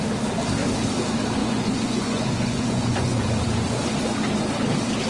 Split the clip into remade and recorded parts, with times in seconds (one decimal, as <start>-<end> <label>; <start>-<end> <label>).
0.0-1.4 recorded; 1.4-3.3 remade; 3.3-5.1 recorded